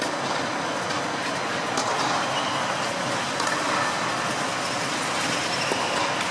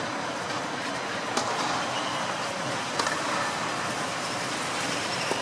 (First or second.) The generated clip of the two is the second